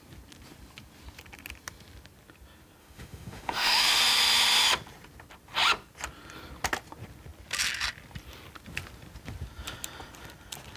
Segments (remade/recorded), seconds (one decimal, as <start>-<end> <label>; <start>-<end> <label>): 0.0-2.8 recorded; 2.8-4.0 remade; 4.0-10.8 recorded